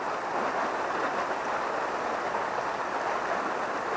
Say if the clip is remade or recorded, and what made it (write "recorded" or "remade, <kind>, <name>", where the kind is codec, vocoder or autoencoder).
recorded